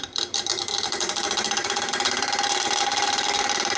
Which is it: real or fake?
fake